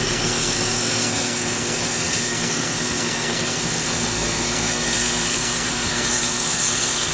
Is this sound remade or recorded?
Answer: remade